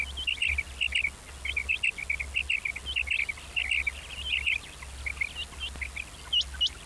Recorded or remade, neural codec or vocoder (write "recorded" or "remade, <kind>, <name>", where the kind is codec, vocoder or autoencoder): recorded